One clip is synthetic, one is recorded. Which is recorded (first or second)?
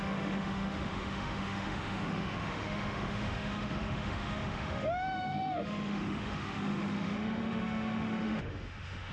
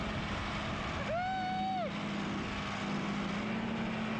second